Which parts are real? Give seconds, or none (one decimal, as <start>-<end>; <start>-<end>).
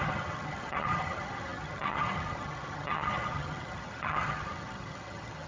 none